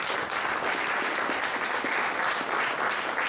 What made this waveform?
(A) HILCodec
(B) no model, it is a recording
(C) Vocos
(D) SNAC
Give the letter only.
B